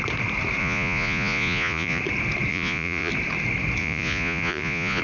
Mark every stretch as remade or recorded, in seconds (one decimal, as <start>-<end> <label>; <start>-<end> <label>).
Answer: 0.0-0.6 recorded; 0.6-2.0 remade; 2.0-2.5 recorded; 2.5-3.1 remade; 3.1-3.8 recorded; 3.8-5.0 remade